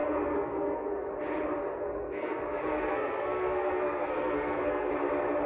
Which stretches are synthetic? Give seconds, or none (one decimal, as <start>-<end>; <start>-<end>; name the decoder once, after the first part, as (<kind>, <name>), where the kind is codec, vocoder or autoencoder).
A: 0.0-1.1 (codec, SNAC); 1.6-4.9